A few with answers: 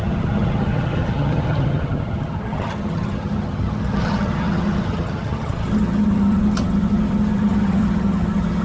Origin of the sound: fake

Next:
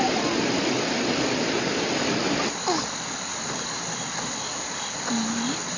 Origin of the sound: real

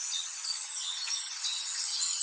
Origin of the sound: fake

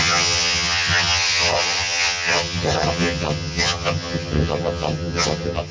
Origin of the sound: fake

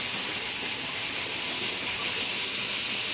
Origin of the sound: real